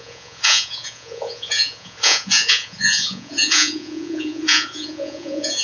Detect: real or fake fake